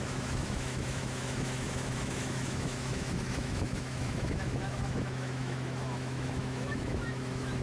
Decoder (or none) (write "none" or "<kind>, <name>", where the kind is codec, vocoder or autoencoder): autoencoder, DAC-VAE